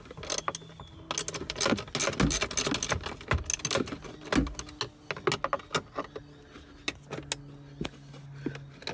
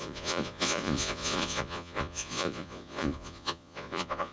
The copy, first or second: second